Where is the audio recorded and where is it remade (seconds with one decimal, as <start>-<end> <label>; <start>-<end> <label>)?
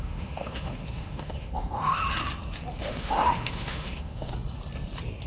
0.0-2.0 remade; 2.0-2.8 recorded; 2.8-4.3 remade; 4.3-5.3 recorded